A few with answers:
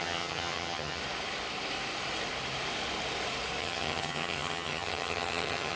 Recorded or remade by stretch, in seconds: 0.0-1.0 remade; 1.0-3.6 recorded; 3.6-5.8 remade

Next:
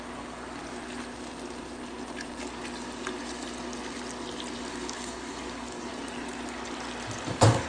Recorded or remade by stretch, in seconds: 0.0-0.6 remade; 0.6-4.7 recorded; 4.7-5.9 remade; 5.9-7.3 recorded; 7.3-7.7 remade

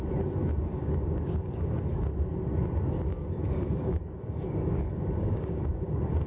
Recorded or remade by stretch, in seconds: 0.0-0.7 recorded; 0.7-1.7 remade; 1.7-3.1 recorded; 3.1-6.3 remade

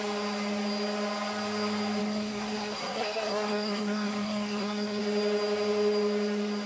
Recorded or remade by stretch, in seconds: 0.0-2.0 recorded; 2.0-5.0 remade; 5.0-6.7 recorded